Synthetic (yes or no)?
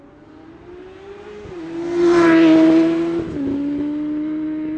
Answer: no